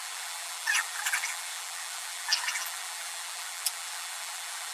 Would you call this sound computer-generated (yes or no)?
yes